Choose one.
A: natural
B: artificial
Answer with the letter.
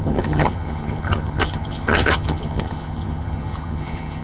B